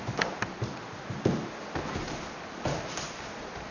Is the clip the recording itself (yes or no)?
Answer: yes